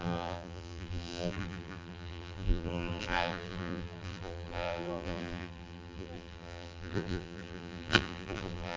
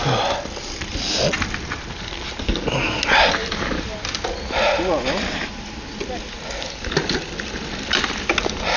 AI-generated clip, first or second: first